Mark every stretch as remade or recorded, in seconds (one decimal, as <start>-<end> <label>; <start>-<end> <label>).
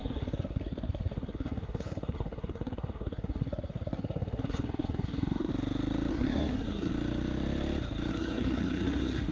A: 0.0-5.5 remade; 5.5-6.1 recorded; 6.1-6.9 remade; 6.9-8.1 recorded; 8.1-9.3 remade